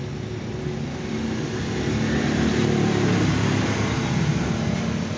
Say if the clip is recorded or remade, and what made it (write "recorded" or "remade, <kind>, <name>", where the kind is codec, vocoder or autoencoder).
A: recorded